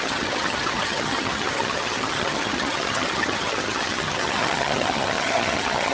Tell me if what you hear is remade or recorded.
remade